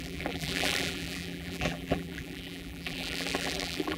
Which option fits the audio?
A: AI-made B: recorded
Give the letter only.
A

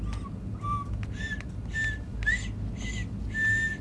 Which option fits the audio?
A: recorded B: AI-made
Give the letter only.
A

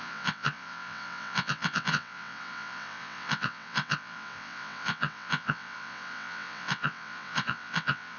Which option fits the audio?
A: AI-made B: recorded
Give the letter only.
A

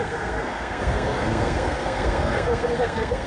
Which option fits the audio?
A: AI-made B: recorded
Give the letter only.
A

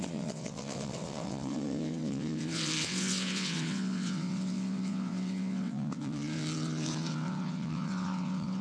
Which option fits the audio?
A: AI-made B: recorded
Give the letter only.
A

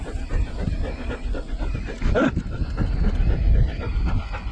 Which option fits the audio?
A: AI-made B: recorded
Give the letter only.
B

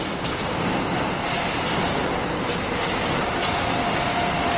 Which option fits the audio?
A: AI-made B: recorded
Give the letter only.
B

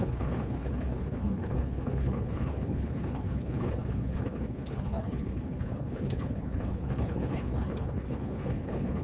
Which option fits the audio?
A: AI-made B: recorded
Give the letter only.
A